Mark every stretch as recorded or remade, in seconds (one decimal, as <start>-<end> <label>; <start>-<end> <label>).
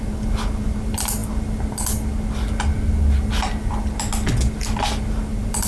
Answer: 0.0-5.7 recorded